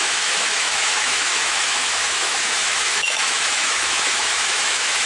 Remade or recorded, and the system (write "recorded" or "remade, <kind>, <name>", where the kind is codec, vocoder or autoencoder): remade, autoencoder, DAC-VAE